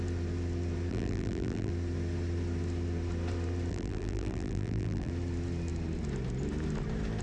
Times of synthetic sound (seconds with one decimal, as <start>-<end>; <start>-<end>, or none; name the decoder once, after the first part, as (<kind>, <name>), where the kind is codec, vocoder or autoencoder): 0.9-1.7 (vocoder, BigVGAN v2); 3.7-5.1